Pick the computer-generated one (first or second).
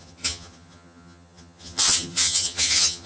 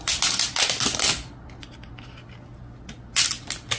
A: first